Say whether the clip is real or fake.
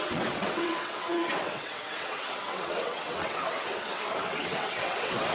fake